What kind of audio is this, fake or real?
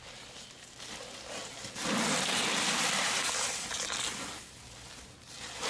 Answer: real